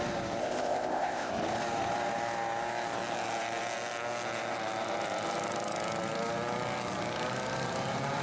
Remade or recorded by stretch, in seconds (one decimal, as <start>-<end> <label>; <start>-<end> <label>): 0.0-0.4 recorded; 0.4-1.3 remade; 1.3-8.2 recorded